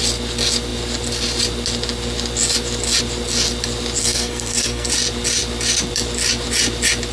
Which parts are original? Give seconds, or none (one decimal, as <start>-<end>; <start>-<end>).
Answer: 0.0-4.0; 4.9-7.1